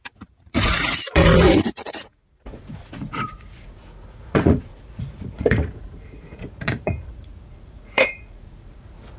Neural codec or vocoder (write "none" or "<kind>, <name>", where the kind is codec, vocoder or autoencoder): vocoder, Vocos